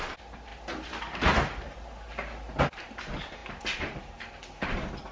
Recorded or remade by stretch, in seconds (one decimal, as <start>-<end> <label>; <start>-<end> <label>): 0.0-5.1 recorded